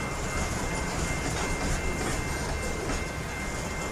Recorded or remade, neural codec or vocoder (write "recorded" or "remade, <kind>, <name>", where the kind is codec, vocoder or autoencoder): recorded